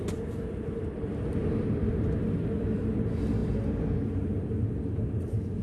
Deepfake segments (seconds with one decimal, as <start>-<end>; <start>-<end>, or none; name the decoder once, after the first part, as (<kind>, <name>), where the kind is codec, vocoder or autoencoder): none